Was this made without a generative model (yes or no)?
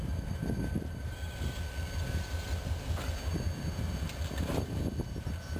yes